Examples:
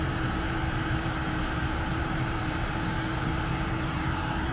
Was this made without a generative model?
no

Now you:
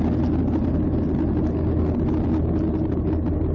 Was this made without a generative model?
yes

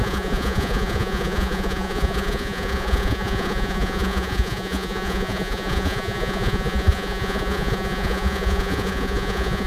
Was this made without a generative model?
no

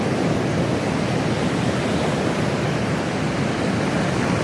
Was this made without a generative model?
yes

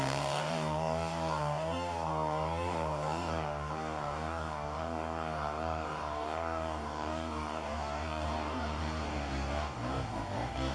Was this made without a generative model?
no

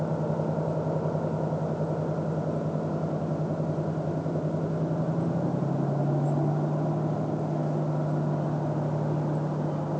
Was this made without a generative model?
yes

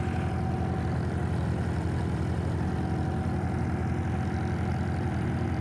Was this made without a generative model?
yes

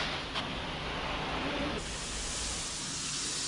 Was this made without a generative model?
yes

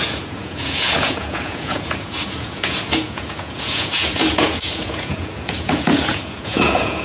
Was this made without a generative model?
no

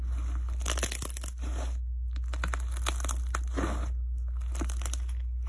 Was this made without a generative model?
yes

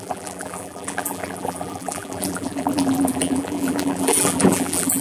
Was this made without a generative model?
no